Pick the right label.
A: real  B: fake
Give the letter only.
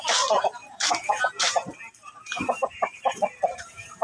B